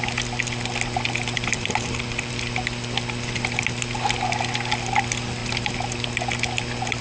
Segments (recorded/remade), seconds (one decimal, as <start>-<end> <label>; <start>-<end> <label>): 0.0-1.5 recorded; 1.5-2.3 remade; 2.3-7.0 recorded